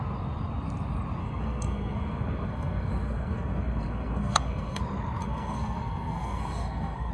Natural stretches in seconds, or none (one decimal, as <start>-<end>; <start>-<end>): 0.0-1.2; 4.8-5.2